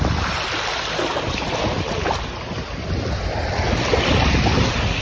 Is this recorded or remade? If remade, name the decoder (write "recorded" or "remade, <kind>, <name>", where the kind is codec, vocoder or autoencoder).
recorded